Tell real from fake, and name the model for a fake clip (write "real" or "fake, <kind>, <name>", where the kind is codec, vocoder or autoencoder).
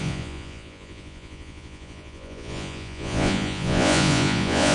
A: fake, vocoder, Vocos